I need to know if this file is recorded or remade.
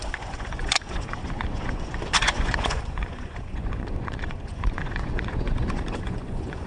remade